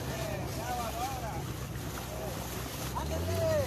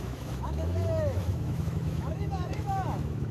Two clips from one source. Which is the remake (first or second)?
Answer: second